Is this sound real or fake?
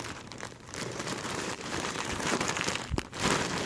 fake